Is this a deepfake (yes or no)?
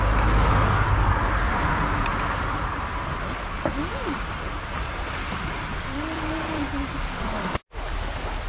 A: no